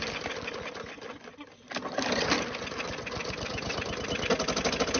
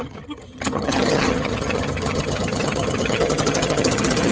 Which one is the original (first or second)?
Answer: first